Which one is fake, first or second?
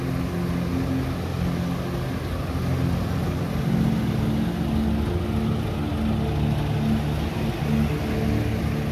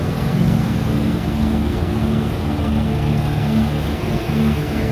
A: second